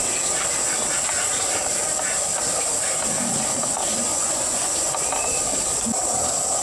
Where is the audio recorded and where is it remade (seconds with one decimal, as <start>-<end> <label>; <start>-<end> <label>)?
0.0-4.1 recorded; 4.1-4.9 remade; 4.9-6.6 recorded